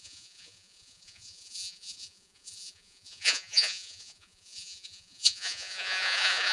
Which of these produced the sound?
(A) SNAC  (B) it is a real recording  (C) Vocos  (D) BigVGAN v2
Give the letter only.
C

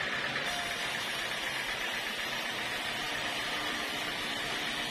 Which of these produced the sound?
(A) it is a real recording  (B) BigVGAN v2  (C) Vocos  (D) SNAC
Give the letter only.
B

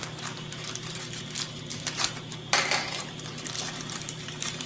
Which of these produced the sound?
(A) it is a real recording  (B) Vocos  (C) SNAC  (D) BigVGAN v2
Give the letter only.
D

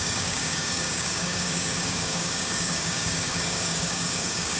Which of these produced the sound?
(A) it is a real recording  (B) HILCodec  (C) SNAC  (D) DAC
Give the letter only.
D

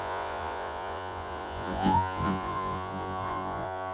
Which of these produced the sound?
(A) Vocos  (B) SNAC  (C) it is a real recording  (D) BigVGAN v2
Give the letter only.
A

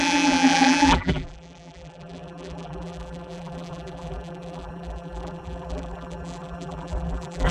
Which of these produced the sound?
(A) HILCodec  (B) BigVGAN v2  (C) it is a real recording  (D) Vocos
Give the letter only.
B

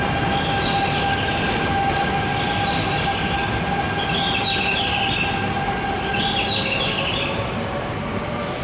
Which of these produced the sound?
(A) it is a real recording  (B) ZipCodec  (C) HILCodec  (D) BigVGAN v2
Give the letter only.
A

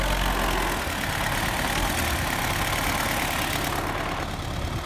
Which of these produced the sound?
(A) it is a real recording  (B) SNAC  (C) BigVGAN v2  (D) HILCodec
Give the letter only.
A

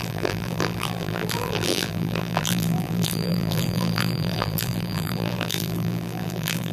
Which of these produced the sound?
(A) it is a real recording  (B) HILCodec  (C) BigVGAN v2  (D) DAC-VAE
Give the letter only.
C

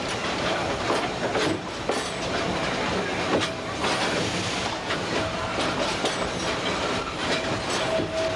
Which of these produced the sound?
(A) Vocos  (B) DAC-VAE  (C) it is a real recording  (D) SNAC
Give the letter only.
C